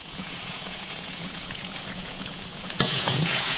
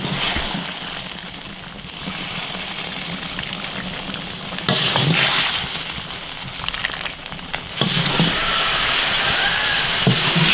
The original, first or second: second